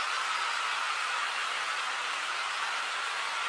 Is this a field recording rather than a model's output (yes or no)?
yes